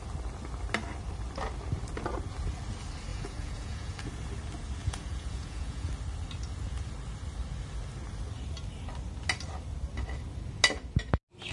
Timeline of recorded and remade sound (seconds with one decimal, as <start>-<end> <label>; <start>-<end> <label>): 0.0-3.1 recorded; 3.1-4.1 remade; 4.1-4.8 recorded; 4.8-5.9 remade; 5.9-11.5 recorded